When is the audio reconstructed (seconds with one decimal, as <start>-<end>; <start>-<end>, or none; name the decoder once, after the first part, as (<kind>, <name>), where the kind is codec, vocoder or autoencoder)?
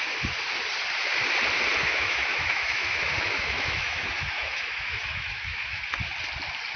1.8-5.8 (autoencoder, DAC-VAE)